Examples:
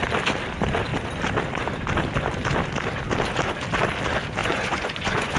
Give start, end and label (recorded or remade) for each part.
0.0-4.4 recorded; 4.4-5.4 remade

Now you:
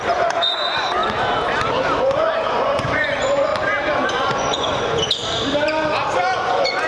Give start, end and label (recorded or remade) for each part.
0.0-1.0 remade; 1.0-2.0 recorded; 2.0-3.5 remade; 3.5-4.1 recorded; 4.1-5.2 remade; 5.2-6.4 recorded; 6.4-6.9 remade

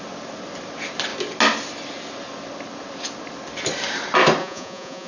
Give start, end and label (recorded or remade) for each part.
0.0-4.4 recorded; 4.4-5.1 remade

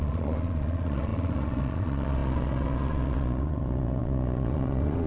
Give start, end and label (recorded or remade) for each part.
0.0-5.1 remade